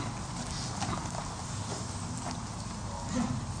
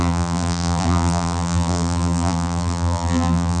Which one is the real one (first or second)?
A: first